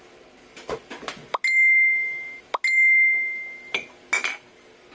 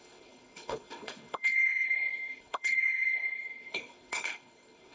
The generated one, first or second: second